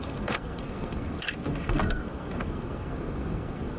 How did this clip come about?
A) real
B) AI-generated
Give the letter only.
B